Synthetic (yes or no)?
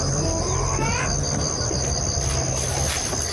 no